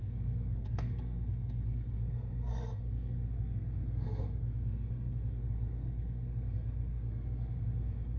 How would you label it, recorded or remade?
remade